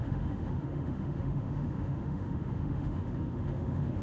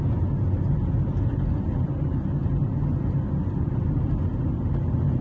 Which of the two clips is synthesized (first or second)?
first